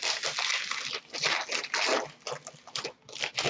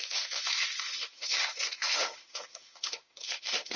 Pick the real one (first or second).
first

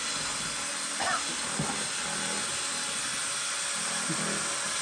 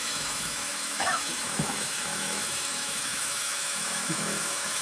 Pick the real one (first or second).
first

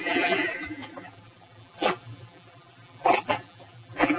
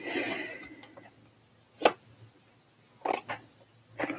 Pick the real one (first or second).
second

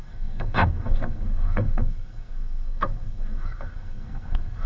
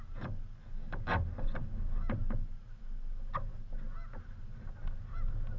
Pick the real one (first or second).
second